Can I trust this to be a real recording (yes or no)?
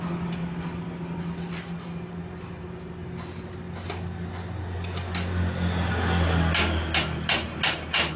yes